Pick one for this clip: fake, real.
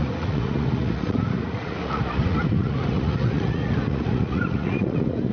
fake